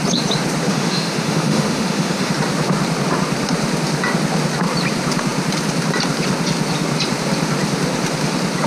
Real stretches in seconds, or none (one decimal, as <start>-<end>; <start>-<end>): 0.0-0.7; 2.3-8.7